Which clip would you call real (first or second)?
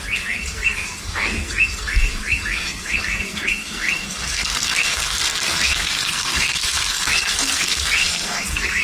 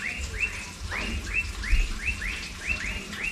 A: second